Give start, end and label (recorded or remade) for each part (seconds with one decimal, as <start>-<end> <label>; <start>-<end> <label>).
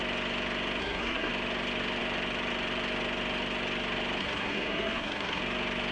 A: 0.0-0.8 recorded; 0.8-1.3 remade; 1.3-4.2 recorded; 4.2-5.4 remade; 5.4-5.9 recorded